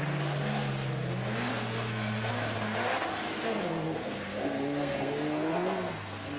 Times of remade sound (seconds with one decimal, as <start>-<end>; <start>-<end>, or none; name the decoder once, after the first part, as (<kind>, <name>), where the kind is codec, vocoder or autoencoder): 1.5-2.3 (codec, SNAC); 3.4-6.4